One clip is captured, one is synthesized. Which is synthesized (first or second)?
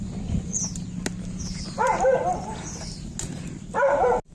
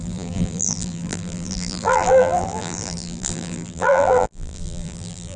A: second